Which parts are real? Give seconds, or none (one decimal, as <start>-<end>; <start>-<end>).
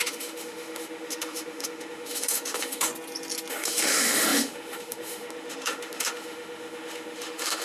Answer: 2.9-3.5